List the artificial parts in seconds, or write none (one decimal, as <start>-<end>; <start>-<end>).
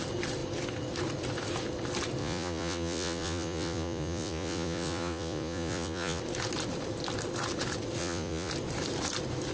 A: 2.2-6.2; 8.0-8.5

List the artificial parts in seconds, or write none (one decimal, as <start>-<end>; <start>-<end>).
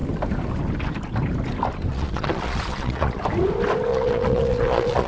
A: 1.9-3.2; 3.9-5.1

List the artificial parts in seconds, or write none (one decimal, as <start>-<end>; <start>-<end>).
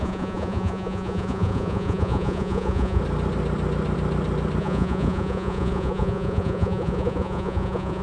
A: 0.0-3.0; 4.6-8.0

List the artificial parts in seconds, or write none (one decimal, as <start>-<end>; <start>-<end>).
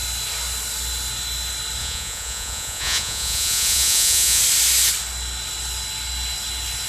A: 1.8-4.4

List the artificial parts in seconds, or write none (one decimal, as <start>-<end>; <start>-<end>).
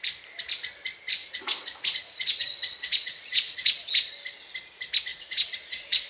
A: 1.2-4.1; 5.1-6.1